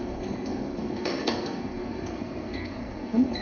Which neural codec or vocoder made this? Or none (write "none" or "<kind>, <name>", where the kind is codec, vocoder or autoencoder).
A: codec, SNAC